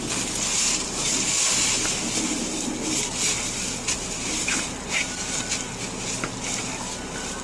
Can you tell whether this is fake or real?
real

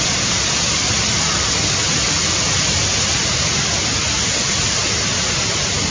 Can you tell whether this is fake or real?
real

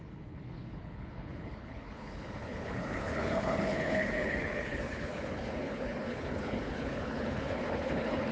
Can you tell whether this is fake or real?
fake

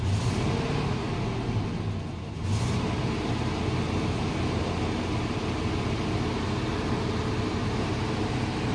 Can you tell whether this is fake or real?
real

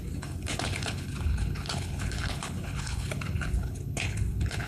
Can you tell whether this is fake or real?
fake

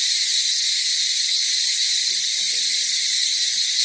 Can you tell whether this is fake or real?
real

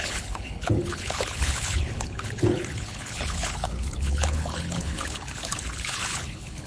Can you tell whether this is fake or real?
fake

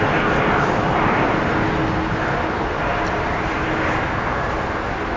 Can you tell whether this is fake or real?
real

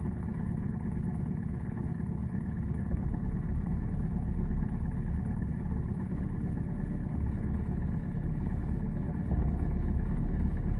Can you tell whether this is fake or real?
fake